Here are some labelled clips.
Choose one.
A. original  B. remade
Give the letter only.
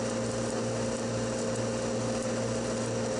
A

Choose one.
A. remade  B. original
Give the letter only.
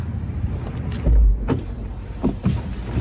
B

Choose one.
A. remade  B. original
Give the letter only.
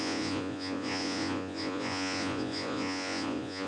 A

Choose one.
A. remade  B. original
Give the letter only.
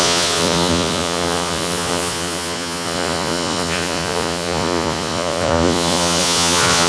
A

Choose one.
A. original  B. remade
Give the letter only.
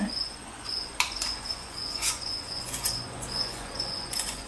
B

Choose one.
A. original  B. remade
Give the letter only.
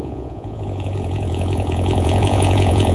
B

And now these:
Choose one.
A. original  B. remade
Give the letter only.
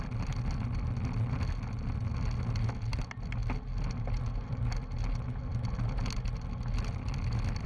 A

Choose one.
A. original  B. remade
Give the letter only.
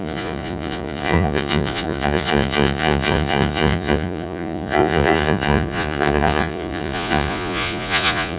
B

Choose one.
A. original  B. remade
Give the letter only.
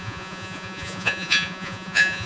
B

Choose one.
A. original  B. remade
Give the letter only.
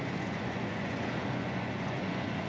B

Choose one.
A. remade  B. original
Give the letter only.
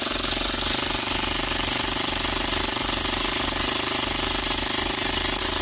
B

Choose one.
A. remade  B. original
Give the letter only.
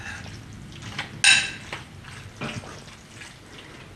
B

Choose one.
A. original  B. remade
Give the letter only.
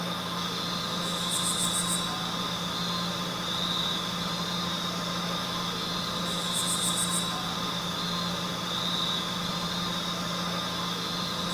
A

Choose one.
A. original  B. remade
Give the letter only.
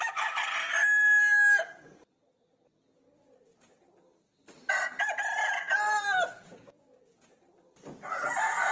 A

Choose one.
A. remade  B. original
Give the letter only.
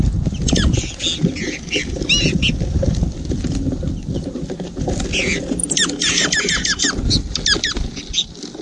B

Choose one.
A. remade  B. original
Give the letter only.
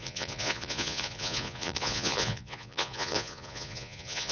A